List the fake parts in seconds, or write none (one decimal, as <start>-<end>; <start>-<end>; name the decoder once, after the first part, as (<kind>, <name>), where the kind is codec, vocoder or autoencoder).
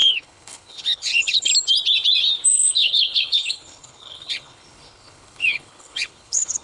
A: 0.0-1.5 (codec, HILCodec); 2.5-6.6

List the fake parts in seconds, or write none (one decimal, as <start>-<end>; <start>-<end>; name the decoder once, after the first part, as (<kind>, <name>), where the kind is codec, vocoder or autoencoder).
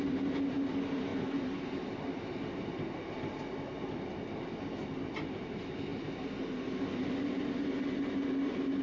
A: none